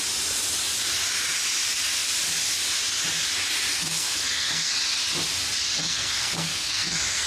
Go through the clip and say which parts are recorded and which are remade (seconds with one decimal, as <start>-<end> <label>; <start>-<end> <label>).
0.0-3.7 recorded; 3.7-4.7 remade; 4.7-5.8 recorded; 5.8-7.3 remade